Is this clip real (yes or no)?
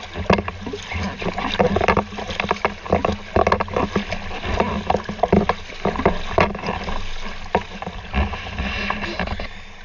yes